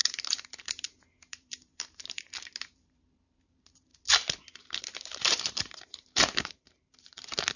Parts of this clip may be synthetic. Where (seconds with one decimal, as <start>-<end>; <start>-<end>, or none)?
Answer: 0.0-3.9; 4.8-7.6